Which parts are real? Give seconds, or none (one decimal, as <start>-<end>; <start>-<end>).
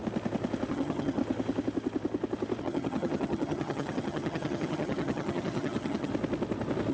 0.0-0.7; 1.2-2.6; 6.1-6.9